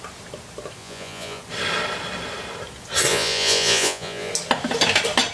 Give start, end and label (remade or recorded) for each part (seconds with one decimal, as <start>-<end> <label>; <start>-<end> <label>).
0.0-0.8 recorded; 0.8-1.4 remade; 1.4-3.1 recorded; 3.1-4.3 remade; 4.3-5.3 recorded